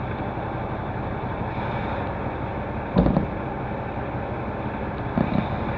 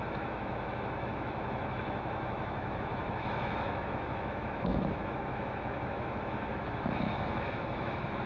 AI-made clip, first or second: second